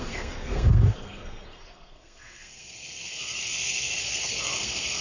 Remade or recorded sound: remade